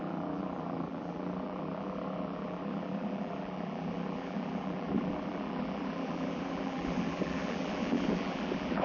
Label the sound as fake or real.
fake